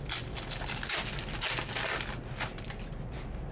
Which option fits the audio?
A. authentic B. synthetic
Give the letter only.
A